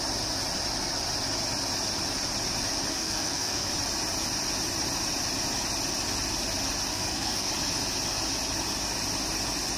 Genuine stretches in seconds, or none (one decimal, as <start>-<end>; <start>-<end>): 0.0-2.9; 3.7-6.9; 7.5-9.8